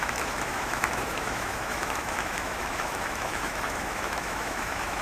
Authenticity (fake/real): fake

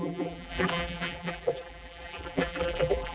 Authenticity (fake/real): fake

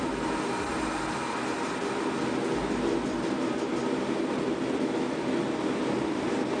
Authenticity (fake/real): real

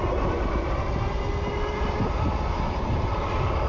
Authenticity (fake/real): real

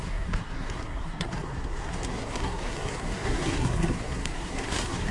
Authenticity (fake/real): fake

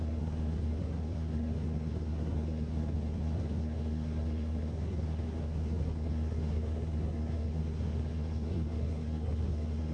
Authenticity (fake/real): fake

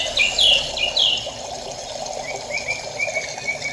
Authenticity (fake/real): real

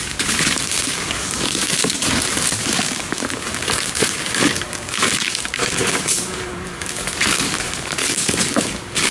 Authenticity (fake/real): fake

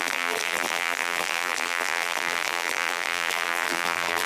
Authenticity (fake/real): fake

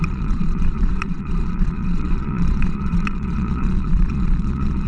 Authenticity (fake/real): fake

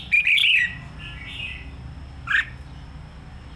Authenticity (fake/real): real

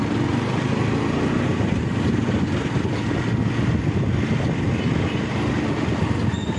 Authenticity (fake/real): real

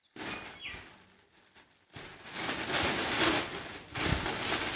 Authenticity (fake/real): real